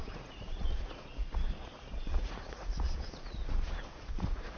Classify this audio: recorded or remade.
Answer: remade